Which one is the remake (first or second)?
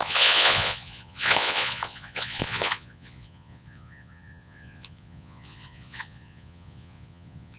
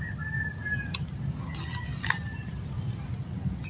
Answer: first